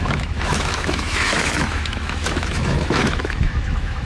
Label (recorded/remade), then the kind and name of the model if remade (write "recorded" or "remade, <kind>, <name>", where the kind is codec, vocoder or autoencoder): remade, autoencoder, DAC-VAE